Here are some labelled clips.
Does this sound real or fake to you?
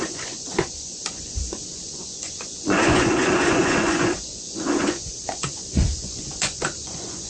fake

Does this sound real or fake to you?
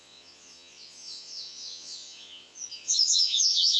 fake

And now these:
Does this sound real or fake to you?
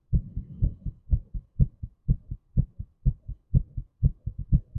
fake